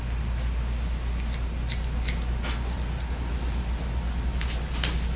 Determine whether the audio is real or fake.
real